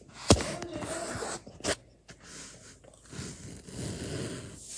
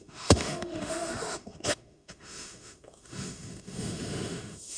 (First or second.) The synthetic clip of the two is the second